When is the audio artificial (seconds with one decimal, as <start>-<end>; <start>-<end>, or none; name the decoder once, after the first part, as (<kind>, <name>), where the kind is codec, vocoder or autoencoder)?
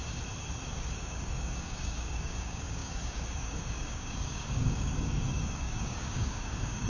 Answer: 0.7-6.9 (codec, DAC)